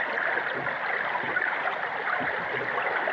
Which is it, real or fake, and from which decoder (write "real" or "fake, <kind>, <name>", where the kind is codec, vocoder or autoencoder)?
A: real